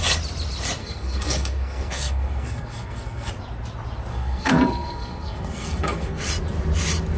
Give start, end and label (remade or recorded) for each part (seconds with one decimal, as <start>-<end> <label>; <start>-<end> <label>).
0.0-0.8 recorded; 0.8-3.3 remade; 3.3-4.1 recorded; 4.1-6.3 remade; 6.3-7.2 recorded